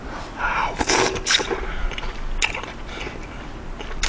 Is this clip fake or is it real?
real